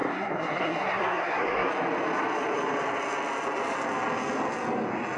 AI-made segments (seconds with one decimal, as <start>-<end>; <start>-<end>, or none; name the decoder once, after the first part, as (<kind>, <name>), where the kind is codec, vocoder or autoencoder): 0.0-1.7 (codec, SNAC)